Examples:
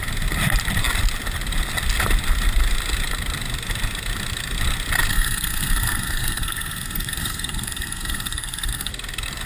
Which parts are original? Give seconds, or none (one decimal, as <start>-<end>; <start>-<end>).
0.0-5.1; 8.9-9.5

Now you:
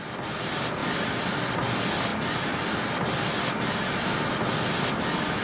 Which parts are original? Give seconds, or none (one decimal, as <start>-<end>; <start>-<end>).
0.0-5.4

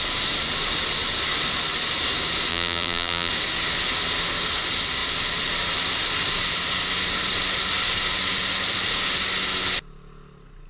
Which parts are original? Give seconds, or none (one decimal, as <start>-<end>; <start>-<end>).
0.0-2.5; 3.3-10.7